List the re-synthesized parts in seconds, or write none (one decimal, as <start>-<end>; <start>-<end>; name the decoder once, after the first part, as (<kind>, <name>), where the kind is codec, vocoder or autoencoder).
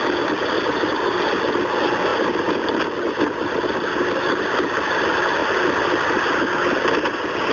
5.4-6.1 (vocoder, BigVGAN v2)